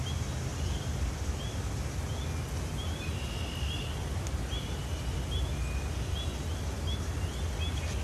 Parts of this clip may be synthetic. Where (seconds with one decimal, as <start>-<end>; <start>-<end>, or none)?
none